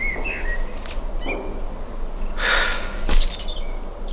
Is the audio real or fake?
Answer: real